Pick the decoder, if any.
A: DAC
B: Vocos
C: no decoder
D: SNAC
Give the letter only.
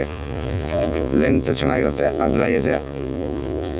B